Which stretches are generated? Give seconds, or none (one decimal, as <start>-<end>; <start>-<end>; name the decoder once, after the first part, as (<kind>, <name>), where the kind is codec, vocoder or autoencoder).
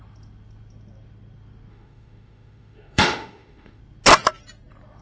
1.7-3.8 (autoencoder, DAC-VAE)